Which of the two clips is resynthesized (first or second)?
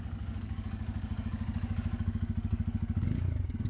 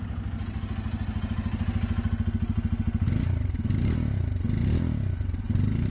first